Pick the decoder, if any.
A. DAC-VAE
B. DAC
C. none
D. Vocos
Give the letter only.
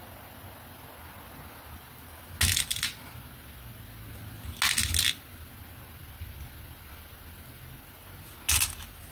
C